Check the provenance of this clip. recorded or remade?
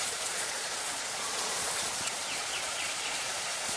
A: remade